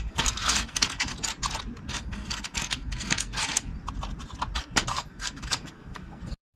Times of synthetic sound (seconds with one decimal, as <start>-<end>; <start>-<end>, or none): 0.0-1.1; 1.9-3.7; 4.6-6.6